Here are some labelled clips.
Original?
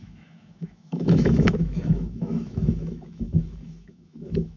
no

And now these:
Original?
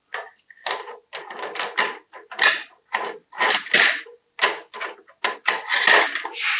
yes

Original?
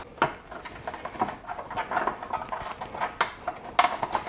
yes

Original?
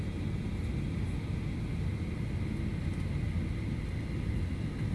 yes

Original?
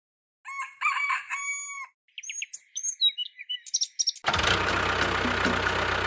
yes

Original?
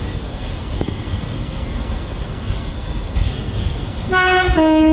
no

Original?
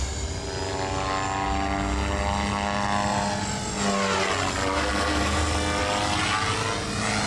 yes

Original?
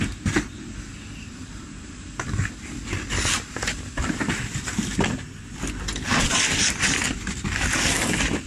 yes